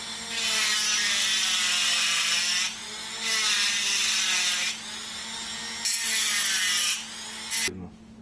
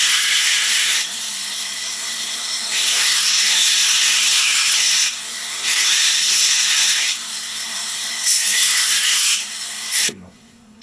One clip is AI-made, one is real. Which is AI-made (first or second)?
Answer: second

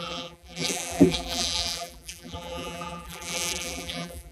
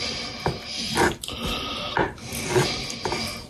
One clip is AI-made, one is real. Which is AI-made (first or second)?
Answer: first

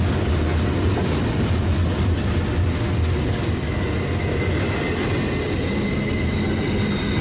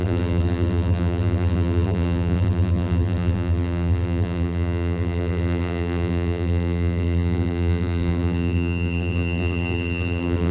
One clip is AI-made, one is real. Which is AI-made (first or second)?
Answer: second